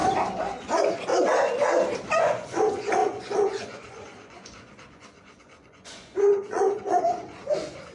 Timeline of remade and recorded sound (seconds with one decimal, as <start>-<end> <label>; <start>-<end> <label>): 0.0-0.6 recorded; 0.6-1.1 remade; 1.1-2.2 recorded; 2.2-7.9 remade